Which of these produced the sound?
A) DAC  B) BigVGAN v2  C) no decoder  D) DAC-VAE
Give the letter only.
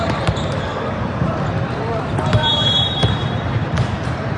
B